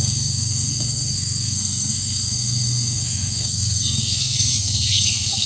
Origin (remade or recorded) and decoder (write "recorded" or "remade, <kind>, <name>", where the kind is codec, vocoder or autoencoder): remade, codec, SNAC